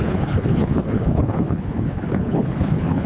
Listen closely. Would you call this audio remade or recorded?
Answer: remade